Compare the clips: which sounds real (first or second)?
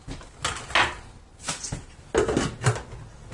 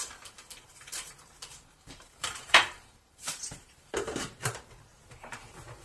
first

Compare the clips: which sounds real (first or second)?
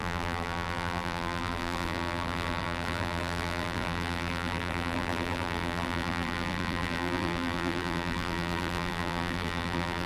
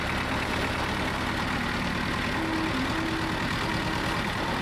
second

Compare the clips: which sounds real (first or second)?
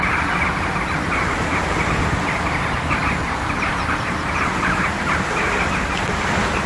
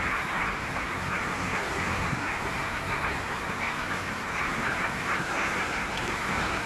first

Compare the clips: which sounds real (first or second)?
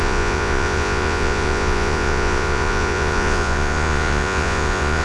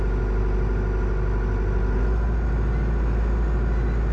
second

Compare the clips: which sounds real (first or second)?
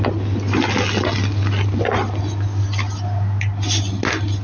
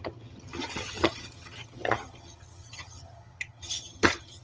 first